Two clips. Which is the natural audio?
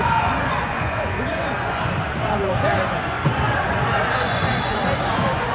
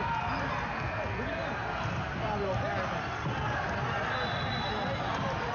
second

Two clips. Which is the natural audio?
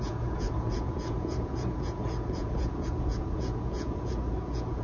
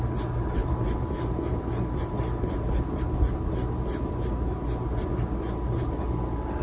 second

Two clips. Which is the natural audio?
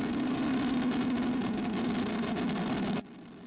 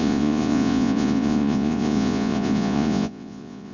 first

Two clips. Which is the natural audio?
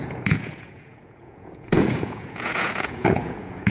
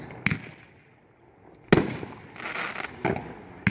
second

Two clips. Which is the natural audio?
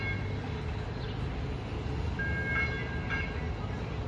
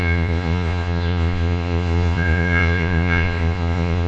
first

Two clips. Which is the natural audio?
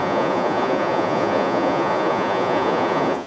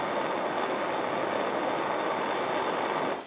second